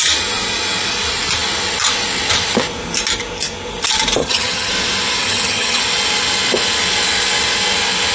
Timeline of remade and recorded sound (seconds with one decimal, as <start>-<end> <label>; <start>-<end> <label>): 0.0-4.2 recorded; 4.2-4.7 remade; 4.7-5.2 recorded; 5.2-5.8 remade; 5.8-8.1 recorded